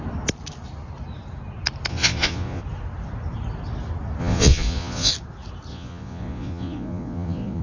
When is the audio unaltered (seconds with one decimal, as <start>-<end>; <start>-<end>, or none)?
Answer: 0.0-1.9; 2.6-4.2; 5.1-5.7